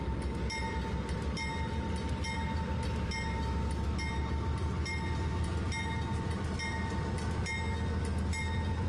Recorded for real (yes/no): yes